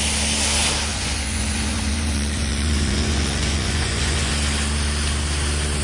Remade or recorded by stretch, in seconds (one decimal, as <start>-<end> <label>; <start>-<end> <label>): 0.0-0.9 recorded; 0.9-4.3 remade; 4.3-5.8 recorded